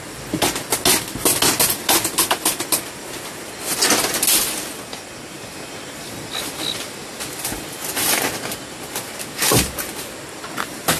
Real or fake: real